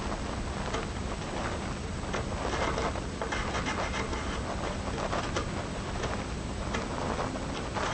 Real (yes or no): yes